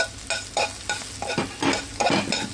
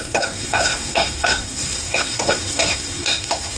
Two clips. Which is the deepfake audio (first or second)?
second